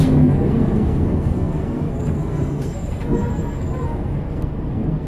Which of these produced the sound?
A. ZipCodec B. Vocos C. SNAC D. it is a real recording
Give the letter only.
C